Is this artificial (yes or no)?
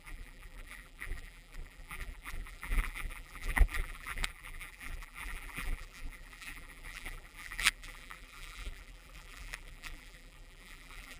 yes